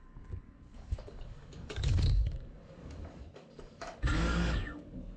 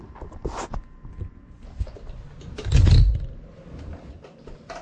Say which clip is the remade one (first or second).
first